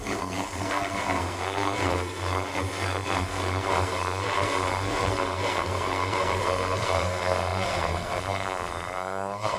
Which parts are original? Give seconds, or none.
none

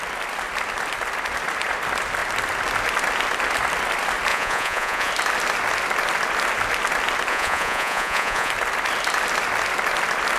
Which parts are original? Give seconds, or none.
0.0-4.3; 5.1-7.3; 8.5-10.4

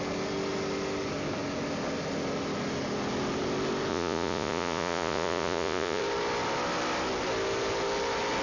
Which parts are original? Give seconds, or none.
0.0-3.9; 6.0-8.4

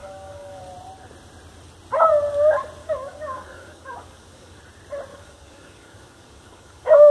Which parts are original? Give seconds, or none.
0.6-2.8; 4.6-5.1

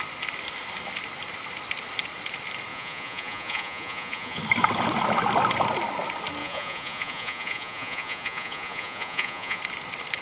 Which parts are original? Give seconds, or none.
0.0-2.7; 4.4-6.4; 9.6-10.2

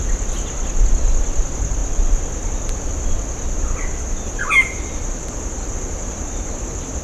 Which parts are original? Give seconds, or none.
0.0-1.8; 4.4-7.0

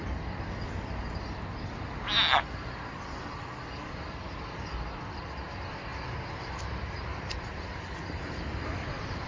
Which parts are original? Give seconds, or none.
0.0-9.3